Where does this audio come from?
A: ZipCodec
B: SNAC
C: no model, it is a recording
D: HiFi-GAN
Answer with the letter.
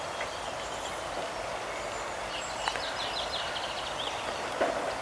C